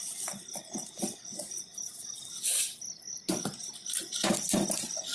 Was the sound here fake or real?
real